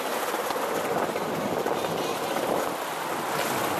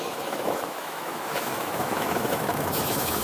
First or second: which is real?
first